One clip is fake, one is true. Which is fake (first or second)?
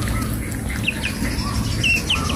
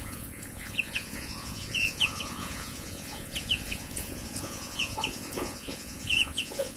second